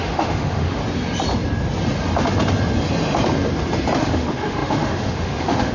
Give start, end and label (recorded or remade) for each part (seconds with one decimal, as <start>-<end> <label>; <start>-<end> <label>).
0.0-0.8 remade; 0.8-4.0 recorded; 4.0-5.7 remade